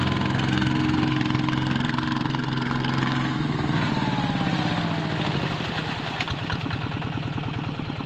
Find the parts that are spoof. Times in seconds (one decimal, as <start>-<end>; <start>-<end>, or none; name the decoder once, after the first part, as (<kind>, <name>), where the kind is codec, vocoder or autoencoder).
0.0-3.9 (codec, SNAC)